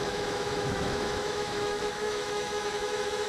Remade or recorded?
remade